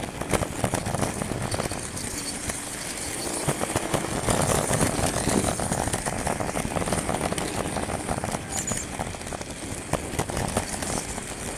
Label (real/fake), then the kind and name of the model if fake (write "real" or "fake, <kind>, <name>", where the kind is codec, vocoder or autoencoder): real